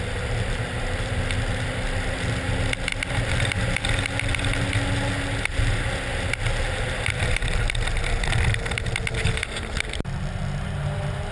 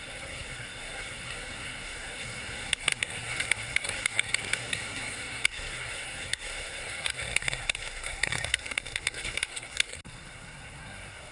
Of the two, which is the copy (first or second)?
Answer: second